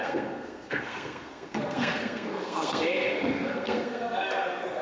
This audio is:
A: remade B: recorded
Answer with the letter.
A